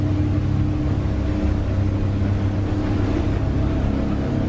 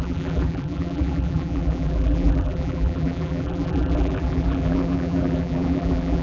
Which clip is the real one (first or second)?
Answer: first